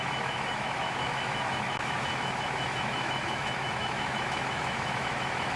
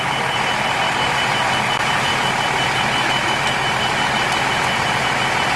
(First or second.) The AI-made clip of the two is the first